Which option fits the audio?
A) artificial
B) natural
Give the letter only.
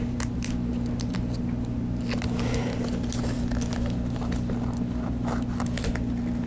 B